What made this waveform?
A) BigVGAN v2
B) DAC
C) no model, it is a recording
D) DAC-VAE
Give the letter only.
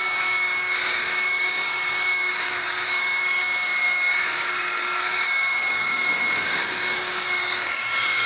B